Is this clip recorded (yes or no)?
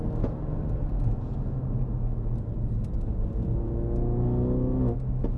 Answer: yes